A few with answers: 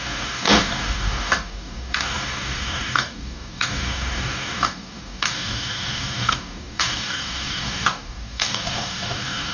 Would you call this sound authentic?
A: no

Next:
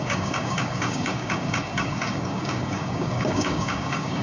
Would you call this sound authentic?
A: no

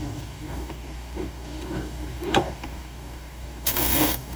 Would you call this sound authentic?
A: no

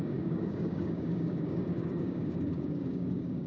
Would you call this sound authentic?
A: no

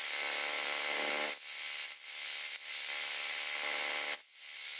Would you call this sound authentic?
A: yes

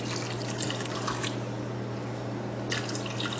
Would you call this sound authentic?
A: yes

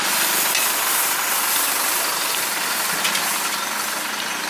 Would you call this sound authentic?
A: yes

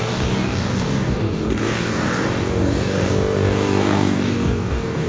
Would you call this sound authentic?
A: no